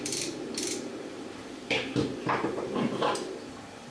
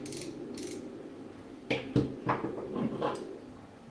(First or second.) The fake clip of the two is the first